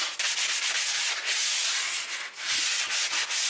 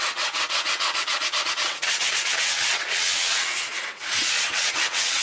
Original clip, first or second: first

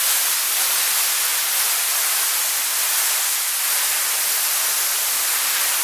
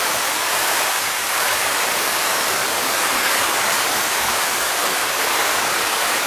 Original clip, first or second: first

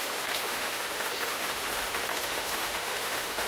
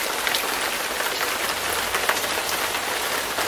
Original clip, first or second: second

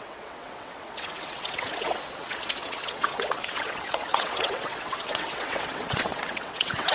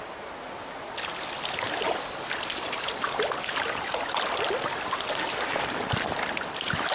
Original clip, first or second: second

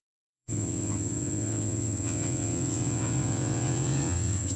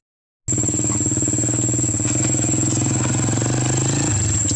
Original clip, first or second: second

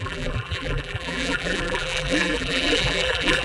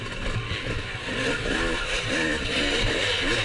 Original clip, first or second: second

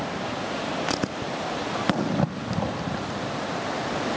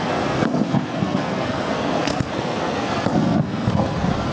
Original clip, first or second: first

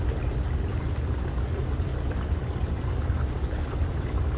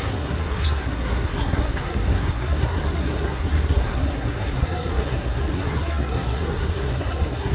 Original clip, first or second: first